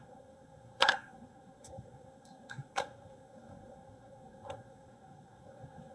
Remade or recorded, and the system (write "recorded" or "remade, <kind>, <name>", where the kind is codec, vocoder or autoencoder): remade, codec, SNAC